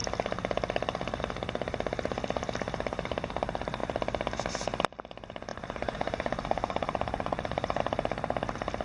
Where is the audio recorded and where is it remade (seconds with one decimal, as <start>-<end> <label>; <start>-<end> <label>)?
0.0-5.5 recorded; 5.5-7.8 remade; 7.8-8.8 recorded